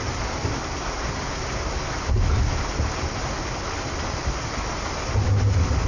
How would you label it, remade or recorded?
recorded